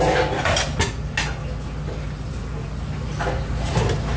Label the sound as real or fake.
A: real